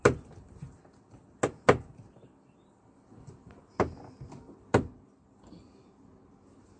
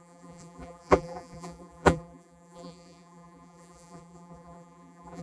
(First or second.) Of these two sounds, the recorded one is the first